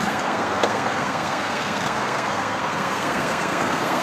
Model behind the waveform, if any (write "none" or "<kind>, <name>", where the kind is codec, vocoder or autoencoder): codec, SNAC